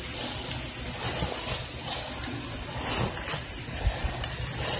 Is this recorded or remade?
recorded